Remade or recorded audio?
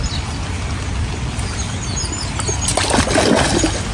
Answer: recorded